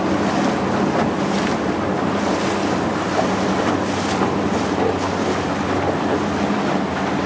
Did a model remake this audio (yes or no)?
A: no